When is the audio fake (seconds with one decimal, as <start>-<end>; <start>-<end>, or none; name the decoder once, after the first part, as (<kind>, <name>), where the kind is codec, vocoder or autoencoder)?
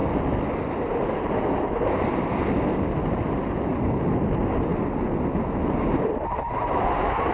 none